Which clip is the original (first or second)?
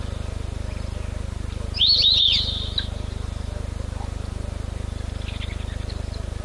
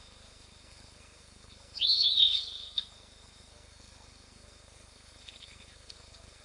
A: first